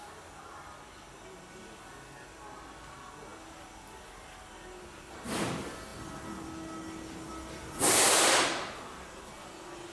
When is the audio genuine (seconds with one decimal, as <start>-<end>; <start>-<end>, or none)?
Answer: 0.0-9.9